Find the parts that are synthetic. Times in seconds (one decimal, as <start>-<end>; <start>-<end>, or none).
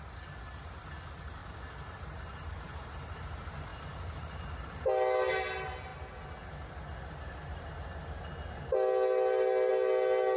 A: 1.4-3.2